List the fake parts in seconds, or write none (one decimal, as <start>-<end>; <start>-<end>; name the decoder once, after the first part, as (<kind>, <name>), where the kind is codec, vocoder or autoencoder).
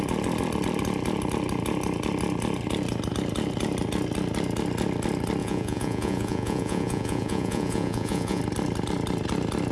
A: 5.4-8.4 (vocoder, Vocos)